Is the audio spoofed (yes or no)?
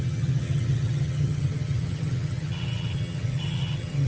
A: yes